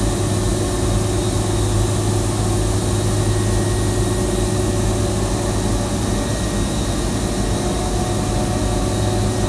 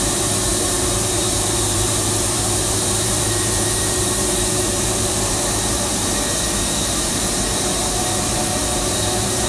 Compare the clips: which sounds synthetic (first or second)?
second